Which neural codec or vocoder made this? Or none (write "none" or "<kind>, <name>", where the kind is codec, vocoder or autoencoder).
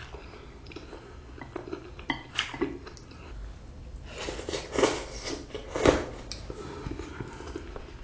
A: none